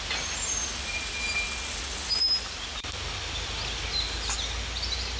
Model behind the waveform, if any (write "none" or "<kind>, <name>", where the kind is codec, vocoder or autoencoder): none